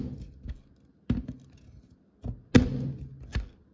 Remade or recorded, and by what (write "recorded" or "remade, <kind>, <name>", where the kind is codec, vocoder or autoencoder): recorded